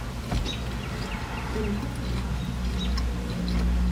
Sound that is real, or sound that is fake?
real